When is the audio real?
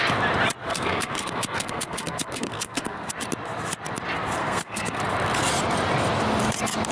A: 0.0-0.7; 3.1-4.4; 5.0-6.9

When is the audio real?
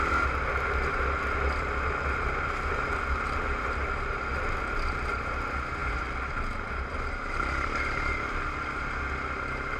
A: 0.0-9.8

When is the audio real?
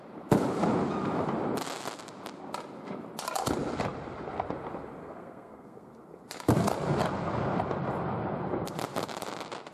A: 0.0-5.0; 5.9-9.7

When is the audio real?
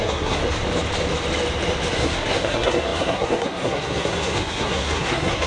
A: 0.4-1.9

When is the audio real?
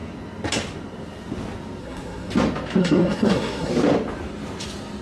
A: 0.0-1.8; 2.3-2.8; 3.7-5.0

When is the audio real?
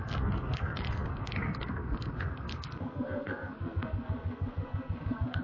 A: none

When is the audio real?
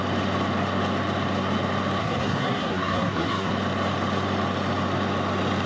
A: 0.0-2.0; 3.5-5.7